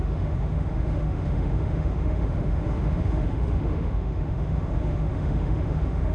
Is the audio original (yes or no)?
no